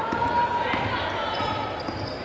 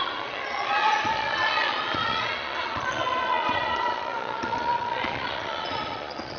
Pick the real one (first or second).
first